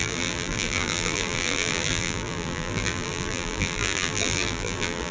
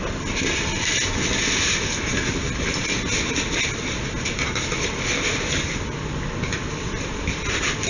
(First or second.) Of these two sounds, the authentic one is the second